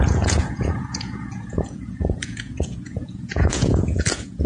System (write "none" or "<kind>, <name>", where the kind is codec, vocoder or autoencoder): vocoder, Vocos